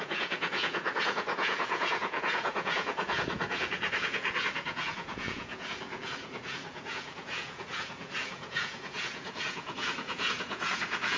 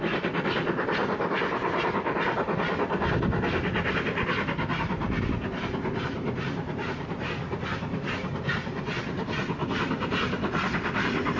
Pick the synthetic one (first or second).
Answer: first